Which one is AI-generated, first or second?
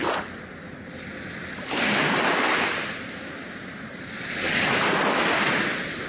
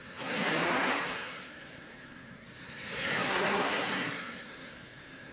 second